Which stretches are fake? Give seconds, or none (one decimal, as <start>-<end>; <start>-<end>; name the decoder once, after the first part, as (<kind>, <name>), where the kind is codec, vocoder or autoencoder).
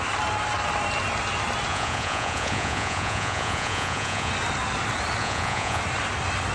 1.7-4.3 (vocoder, Vocos); 5.2-5.8